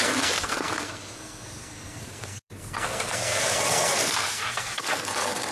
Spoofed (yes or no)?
yes